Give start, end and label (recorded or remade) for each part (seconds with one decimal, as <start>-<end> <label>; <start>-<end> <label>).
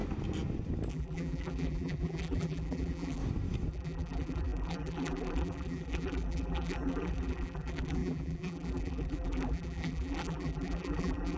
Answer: 0.0-0.9 recorded; 0.9-3.2 remade; 3.2-3.7 recorded; 3.7-11.4 remade